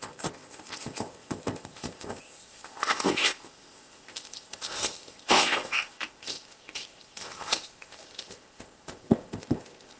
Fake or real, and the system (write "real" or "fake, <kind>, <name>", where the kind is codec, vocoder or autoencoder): fake, codec, ZipCodec